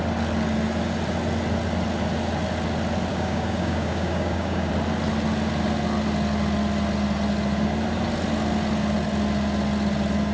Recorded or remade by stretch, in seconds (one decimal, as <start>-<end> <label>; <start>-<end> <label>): 0.0-3.1 recorded; 3.1-4.7 remade; 4.7-10.3 recorded